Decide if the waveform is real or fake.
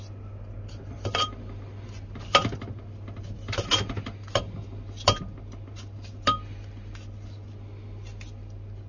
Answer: real